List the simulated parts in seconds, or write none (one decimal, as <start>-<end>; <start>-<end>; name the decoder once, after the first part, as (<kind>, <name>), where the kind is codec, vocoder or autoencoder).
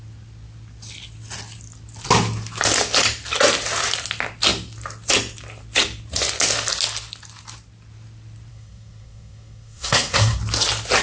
8.5-10.4 (codec, SNAC)